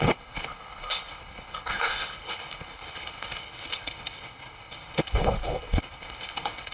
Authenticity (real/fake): fake